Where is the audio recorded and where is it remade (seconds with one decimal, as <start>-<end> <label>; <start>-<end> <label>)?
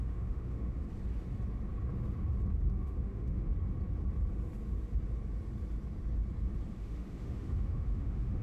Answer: 0.0-0.8 remade; 0.8-2.7 recorded; 2.7-3.5 remade; 3.5-6.7 recorded; 6.7-8.4 remade